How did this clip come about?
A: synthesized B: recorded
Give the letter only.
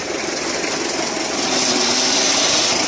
A